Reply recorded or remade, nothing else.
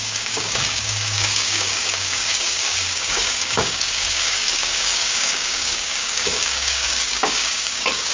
remade